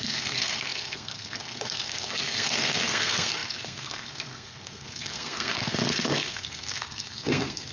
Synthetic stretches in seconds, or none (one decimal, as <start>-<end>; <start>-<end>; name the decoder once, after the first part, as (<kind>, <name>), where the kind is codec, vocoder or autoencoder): 0.0-7.7 (codec, SNAC)